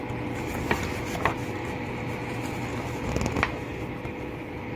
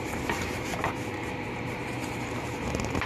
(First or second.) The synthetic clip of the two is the second